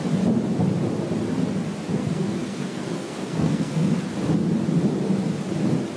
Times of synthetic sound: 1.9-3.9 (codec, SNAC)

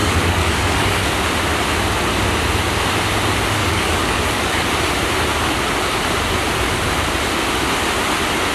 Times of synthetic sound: 0.0-1.1 (codec, DAC); 3.6-4.8

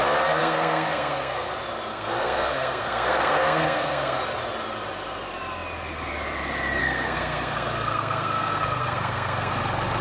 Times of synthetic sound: 0.4-1.5 (codec, SNAC); 1.9-4.2; 6.8-9.5

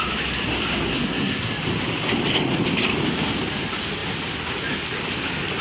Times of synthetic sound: 0.9-1.5 (codec, SNAC)

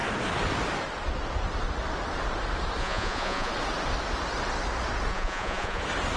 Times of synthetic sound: 2.8-3.5 (vocoder, Vocos); 5.1-5.8

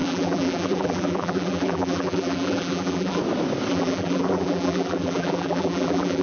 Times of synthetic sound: 0.0-3.2 (vocoder, BigVGAN v2); 3.7-6.2